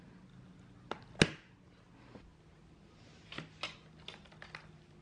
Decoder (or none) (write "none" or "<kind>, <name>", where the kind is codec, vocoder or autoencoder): none